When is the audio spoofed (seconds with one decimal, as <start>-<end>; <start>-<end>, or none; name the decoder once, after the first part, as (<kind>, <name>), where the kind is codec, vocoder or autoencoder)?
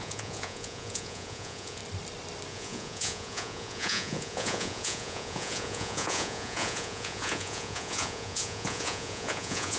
0.0-1.8 (vocoder, Vocos); 2.5-9.8